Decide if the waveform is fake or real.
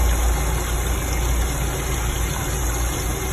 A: real